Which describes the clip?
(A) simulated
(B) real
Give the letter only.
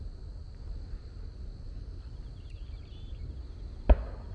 B